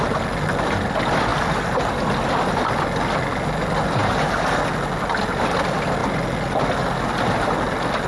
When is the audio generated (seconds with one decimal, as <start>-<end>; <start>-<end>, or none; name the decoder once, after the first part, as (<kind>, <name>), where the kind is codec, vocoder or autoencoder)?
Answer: none